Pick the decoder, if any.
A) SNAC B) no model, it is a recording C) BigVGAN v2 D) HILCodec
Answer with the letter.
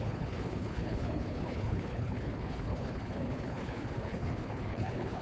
D